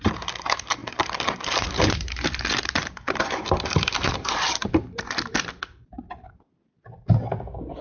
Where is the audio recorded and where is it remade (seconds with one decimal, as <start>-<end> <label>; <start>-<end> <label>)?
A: 0.0-0.8 recorded; 0.8-5.5 remade; 5.5-7.8 recorded